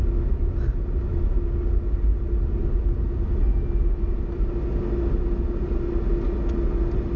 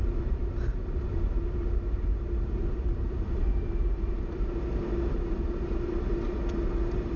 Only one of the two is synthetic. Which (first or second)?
second